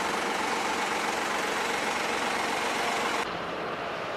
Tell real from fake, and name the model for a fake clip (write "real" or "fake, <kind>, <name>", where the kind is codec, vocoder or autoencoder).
real